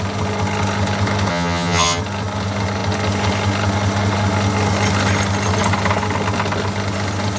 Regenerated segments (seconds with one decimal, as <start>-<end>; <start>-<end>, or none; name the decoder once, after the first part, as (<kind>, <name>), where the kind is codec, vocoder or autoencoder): 1.3-2.0 (vocoder, HiFi-GAN)